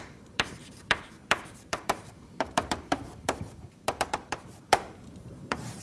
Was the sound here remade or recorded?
remade